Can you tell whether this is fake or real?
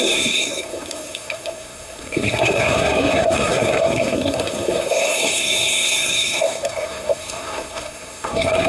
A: fake